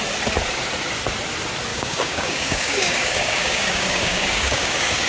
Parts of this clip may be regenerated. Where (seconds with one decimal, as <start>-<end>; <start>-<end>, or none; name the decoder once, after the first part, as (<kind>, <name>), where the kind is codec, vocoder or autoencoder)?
1.7-5.1 (codec, DAC)